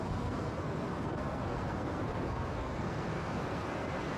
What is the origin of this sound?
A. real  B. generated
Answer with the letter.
B